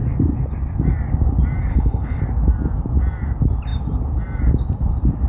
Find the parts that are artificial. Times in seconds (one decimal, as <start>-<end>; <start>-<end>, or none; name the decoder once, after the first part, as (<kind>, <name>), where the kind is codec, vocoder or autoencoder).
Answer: 1.7-2.2 (codec, HILCodec)

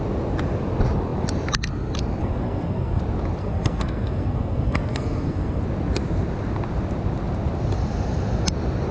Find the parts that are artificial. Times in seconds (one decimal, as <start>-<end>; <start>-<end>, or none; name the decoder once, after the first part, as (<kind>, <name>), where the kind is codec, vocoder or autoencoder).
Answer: 2.2-3.0 (codec, SNAC); 3.4-5.6

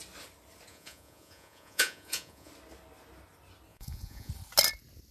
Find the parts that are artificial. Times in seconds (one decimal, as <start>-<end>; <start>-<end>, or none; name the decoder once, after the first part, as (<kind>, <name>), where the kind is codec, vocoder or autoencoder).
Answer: 0.7-2.5 (vocoder, Vocos); 3.7-4.3

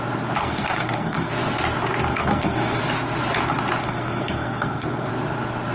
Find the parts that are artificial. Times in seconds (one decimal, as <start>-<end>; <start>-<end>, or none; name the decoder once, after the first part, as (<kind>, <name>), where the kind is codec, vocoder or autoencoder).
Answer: 0.4-1.3 (codec, SNAC); 2.1-2.8; 3.8-5.1

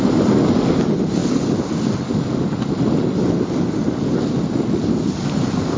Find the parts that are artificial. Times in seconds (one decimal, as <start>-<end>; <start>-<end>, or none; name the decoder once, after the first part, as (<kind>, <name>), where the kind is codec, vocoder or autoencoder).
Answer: none

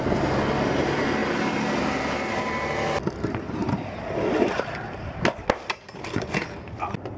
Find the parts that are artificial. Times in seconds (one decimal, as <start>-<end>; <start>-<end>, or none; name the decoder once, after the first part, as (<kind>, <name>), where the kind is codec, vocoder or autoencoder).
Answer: none